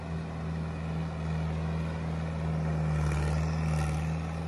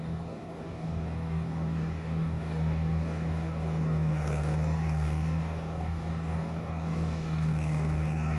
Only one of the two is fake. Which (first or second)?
second